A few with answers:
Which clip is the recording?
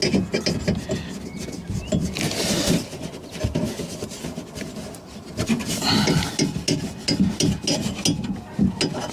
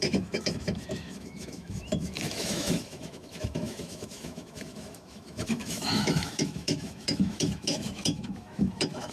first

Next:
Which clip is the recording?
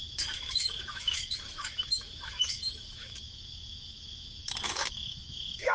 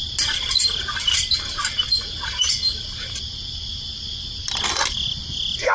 second